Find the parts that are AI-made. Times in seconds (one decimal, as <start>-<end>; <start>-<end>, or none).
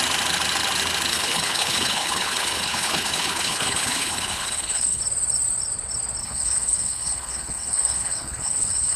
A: 1.1-5.0; 6.2-9.0